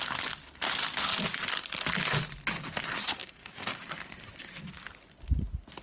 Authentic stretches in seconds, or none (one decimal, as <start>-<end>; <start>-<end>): 0.0-3.2; 3.9-5.8